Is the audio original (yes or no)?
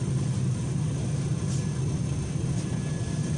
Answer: yes